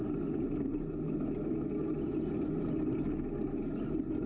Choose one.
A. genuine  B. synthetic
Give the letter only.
A